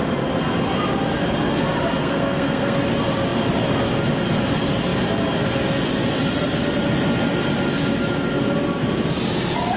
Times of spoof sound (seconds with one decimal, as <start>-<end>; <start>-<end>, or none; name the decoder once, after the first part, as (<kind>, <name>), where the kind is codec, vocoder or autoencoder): 2.0-2.8 (codec, SNAC)